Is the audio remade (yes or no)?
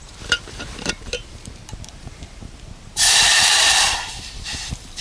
yes